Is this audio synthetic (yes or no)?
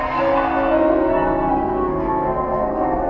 yes